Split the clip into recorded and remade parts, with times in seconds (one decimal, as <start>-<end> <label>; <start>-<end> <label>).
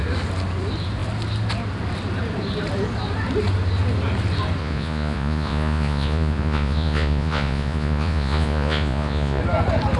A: 0.0-4.6 recorded; 4.6-9.4 remade; 9.4-10.0 recorded